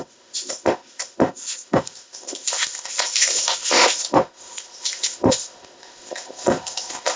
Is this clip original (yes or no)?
no